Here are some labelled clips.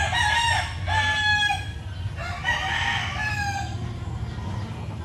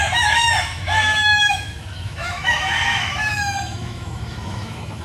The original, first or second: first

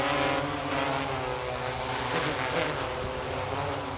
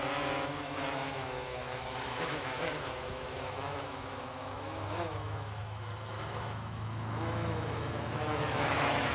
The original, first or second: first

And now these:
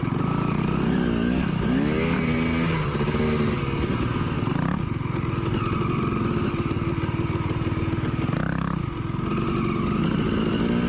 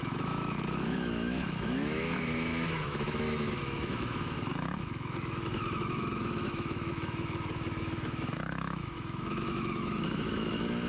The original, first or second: first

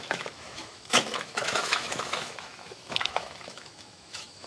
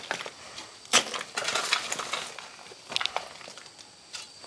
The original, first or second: second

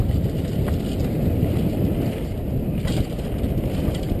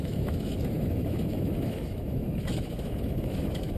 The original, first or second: first